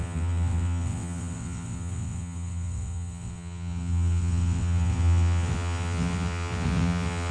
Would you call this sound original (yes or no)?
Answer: no